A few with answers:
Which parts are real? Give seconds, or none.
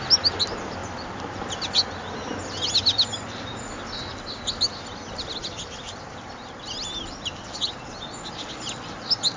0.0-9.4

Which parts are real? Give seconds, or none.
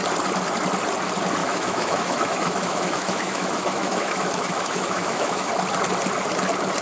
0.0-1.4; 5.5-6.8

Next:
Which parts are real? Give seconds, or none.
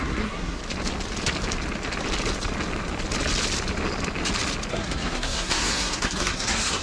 0.6-4.7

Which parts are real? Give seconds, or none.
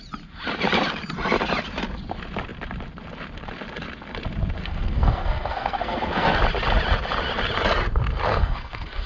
0.0-4.6; 6.4-8.3